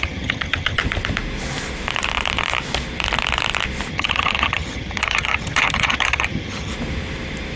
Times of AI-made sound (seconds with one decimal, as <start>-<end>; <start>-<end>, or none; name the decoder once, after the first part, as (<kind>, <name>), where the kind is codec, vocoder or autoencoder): 0.0-0.8 (vocoder, HiFi-GAN); 3.9-6.7